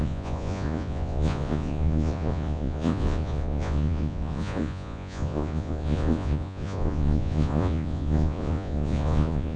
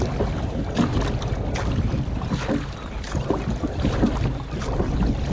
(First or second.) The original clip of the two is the second